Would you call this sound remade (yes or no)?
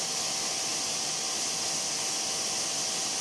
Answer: no